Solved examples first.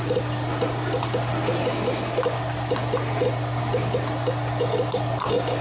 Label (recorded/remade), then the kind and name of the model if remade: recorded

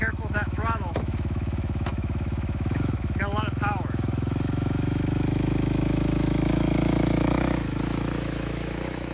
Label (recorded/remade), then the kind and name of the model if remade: remade, autoencoder, DAC-VAE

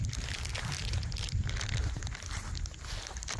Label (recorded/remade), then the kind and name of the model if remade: recorded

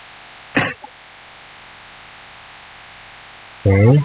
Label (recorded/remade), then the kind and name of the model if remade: recorded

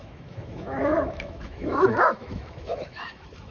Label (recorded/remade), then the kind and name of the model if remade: remade, autoencoder, DAC-VAE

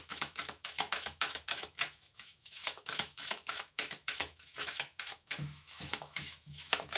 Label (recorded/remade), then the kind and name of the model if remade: remade, autoencoder, DAC-VAE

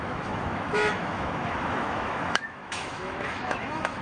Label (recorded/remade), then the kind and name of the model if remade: remade, autoencoder, DAC-VAE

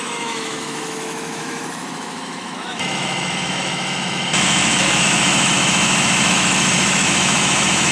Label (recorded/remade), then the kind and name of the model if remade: remade, autoencoder, DAC-VAE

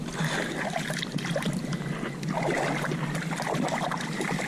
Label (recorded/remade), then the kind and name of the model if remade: recorded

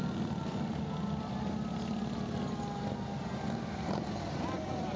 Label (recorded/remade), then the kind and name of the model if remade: recorded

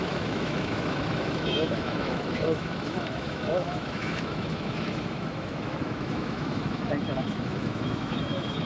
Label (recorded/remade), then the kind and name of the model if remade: remade, autoencoder, DAC-VAE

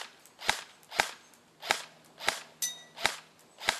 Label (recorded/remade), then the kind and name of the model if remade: recorded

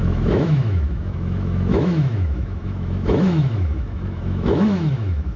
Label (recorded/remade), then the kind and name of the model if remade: remade, autoencoder, DAC-VAE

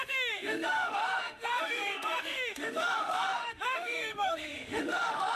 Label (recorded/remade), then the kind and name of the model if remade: remade, autoencoder, DAC-VAE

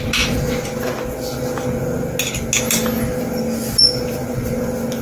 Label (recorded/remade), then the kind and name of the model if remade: recorded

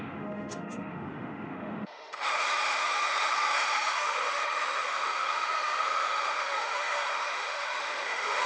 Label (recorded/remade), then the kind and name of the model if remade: remade, autoencoder, DAC-VAE